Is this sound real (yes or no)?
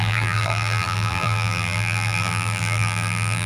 no